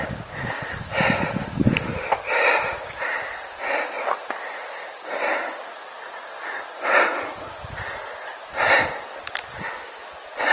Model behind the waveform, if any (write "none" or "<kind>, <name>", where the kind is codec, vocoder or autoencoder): none